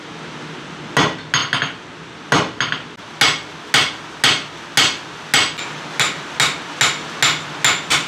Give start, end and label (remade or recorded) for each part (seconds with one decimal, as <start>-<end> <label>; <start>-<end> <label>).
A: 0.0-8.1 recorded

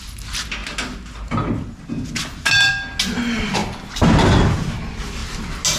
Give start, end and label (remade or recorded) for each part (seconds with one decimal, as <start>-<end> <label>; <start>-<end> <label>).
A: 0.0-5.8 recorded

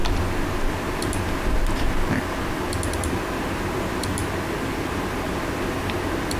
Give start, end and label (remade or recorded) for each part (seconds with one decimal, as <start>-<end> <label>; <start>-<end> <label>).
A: 0.0-6.4 recorded